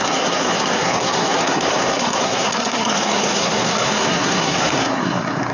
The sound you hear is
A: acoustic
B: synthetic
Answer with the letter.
B